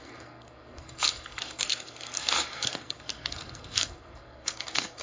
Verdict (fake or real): fake